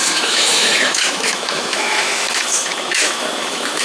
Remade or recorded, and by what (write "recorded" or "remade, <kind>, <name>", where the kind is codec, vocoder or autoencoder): remade, autoencoder, DAC-VAE